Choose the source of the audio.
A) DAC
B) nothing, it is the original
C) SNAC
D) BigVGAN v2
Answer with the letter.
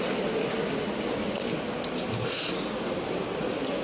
B